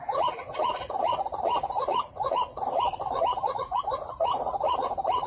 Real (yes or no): no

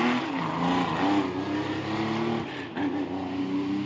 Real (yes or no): yes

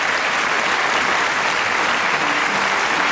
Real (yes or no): yes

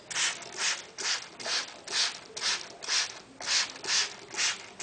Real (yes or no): yes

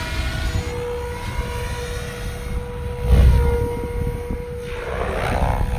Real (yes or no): yes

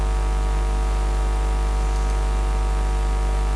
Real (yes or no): yes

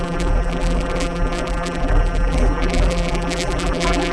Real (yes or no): no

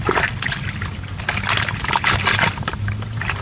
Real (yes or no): yes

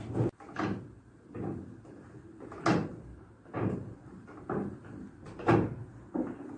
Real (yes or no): yes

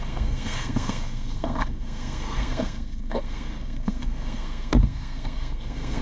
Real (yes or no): no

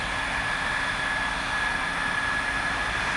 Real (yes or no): yes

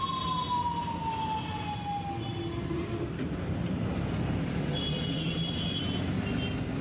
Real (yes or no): yes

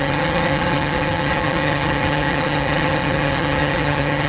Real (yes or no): no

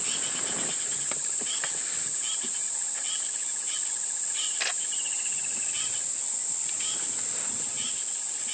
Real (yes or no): yes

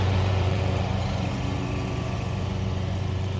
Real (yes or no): no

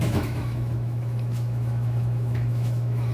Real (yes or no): no